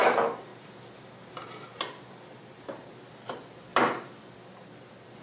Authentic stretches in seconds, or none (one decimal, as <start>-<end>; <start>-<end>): 0.0-5.2